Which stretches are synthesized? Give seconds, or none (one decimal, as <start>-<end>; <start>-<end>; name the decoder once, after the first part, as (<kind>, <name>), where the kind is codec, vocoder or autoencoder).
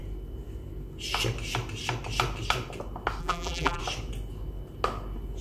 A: 3.2-3.8 (vocoder, BigVGAN v2)